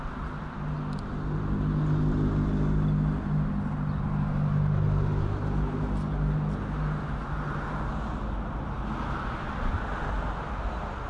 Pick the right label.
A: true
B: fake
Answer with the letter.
A